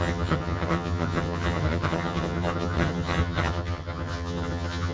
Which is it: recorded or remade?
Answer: remade